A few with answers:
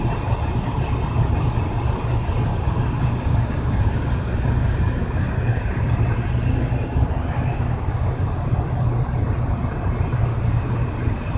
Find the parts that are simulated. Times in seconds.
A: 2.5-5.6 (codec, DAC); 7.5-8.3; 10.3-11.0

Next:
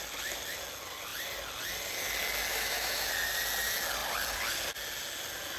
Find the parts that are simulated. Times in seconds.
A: 2.5-3.1 (autoencoder, DAC-VAE)

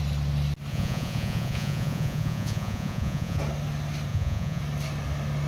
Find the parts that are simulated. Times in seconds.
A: 0.7-3.4 (vocoder, Vocos); 4.1-4.6